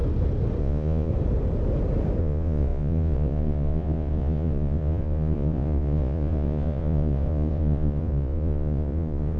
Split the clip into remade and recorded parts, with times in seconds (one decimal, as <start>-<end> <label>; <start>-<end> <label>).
0.0-0.6 recorded; 0.6-1.1 remade; 1.1-2.2 recorded; 2.2-9.4 remade